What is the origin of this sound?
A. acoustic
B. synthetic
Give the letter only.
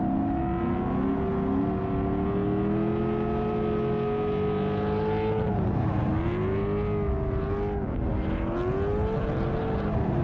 A